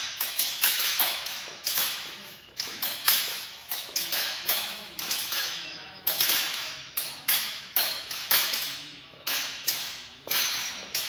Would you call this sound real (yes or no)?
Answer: no